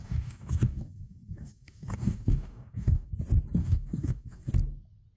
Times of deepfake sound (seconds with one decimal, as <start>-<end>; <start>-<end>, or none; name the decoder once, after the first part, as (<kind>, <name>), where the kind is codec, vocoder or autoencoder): 0.0-3.1 (codec, DAC); 3.6-4.5